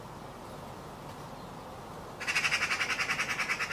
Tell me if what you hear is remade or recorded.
recorded